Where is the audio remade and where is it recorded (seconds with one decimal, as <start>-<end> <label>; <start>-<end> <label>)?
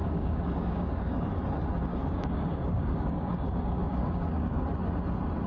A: 0.0-1.3 remade; 1.3-1.9 recorded; 1.9-4.6 remade; 4.6-5.5 recorded